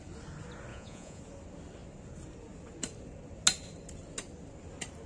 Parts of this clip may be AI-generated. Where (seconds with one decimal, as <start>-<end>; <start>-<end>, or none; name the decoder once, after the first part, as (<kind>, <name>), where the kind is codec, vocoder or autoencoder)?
0.7-1.2 (vocoder, Vocos)